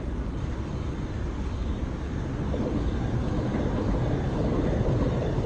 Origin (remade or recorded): recorded